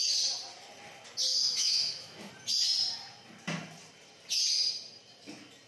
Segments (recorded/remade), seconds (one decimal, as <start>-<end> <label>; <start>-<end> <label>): 0.0-1.3 recorded; 1.3-2.3 remade; 2.3-5.7 recorded

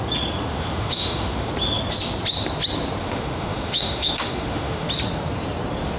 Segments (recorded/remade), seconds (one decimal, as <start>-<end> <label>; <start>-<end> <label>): 0.0-0.5 recorded; 0.5-1.5 remade; 1.5-3.0 recorded; 3.0-4.9 remade; 4.9-6.0 recorded

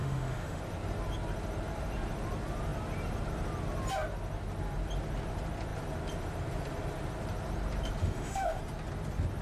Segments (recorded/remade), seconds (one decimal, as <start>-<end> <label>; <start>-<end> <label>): 0.0-0.6 remade; 0.6-8.0 recorded; 8.0-8.6 remade; 8.6-9.4 recorded

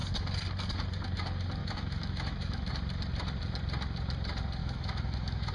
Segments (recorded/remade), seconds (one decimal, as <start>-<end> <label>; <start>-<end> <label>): 0.0-1.6 recorded; 1.6-2.7 remade; 2.7-4.6 recorded; 4.6-5.5 remade